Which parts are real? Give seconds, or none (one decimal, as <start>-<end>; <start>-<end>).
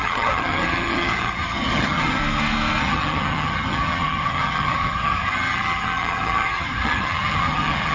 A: 2.2-2.8